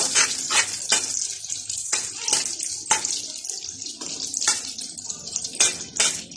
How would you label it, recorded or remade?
recorded